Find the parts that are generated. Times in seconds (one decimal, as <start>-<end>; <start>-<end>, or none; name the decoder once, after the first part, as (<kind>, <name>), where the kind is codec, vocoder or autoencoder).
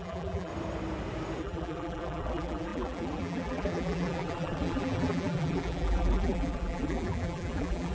0.0-0.5 (vocoder, BigVGAN v2); 1.4-7.9